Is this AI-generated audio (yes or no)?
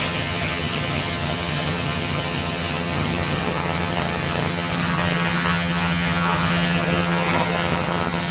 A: yes